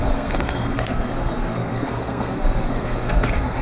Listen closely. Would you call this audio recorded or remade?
remade